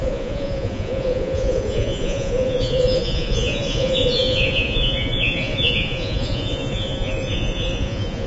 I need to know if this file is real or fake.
fake